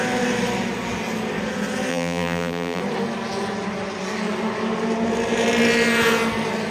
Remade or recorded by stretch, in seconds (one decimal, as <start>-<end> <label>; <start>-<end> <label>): 0.0-1.9 recorded; 1.9-2.8 remade; 2.8-6.7 recorded